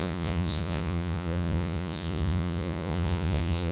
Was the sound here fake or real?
fake